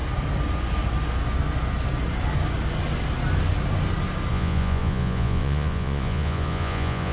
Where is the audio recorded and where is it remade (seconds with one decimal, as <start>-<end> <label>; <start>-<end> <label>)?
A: 0.0-4.3 recorded; 4.3-7.1 remade